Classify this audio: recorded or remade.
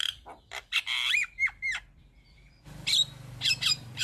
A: remade